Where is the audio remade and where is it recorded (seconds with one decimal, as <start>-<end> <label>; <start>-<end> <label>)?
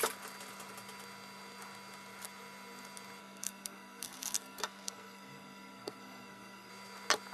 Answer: 0.0-3.2 recorded; 3.2-6.7 remade; 6.7-7.3 recorded